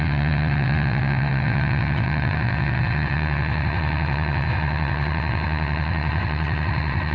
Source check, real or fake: fake